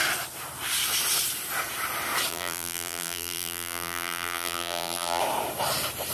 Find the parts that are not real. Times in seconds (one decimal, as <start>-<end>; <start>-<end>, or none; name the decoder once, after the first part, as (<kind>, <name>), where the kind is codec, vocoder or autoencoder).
2.3-5.2 (vocoder, BigVGAN v2)